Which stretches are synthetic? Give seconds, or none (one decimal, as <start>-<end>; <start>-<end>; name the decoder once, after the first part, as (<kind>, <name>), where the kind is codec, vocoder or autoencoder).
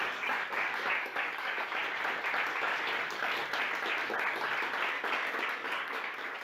0.0-1.8 (codec, DAC); 2.5-3.4; 4.9-6.4